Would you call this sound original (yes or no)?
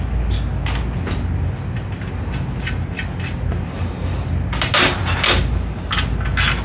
yes